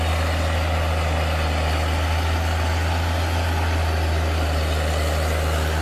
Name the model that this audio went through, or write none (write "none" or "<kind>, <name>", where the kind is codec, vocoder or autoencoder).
none